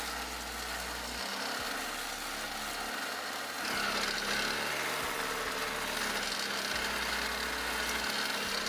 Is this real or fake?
real